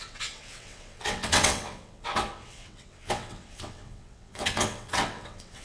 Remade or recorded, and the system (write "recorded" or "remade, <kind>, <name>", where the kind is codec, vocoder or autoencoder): remade, vocoder, WaveNeXt